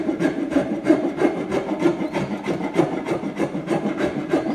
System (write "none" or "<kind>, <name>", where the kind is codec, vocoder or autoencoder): vocoder, BigVGAN v2